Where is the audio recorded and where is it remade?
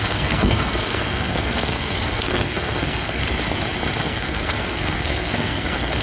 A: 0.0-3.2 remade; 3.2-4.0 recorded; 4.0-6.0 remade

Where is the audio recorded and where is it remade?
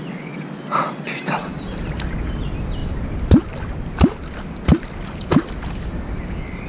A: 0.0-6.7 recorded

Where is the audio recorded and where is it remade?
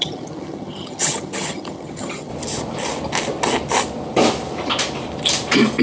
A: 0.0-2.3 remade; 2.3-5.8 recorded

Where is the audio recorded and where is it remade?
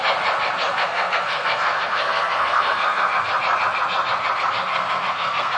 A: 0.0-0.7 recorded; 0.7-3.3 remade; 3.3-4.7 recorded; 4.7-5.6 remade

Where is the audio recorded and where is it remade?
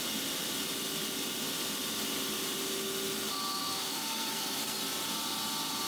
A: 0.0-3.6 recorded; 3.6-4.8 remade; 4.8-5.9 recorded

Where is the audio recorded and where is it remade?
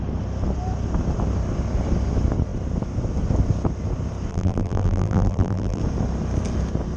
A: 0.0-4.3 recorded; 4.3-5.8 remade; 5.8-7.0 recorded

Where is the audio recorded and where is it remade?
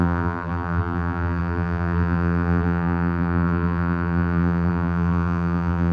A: 0.0-5.9 remade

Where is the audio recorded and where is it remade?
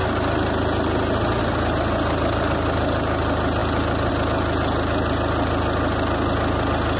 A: 0.0-7.0 recorded